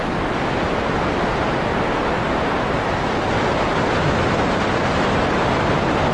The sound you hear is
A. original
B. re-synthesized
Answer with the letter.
A